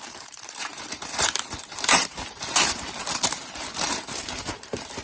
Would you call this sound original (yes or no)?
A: no